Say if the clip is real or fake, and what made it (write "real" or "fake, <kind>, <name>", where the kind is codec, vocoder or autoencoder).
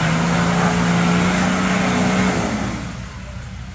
real